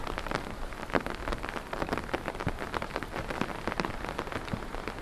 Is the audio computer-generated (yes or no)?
no